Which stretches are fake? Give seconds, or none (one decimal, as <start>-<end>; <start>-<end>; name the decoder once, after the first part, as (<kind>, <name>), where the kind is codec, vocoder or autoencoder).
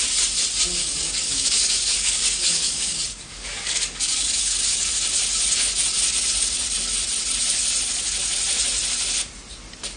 0.8-4.9 (codec, DAC)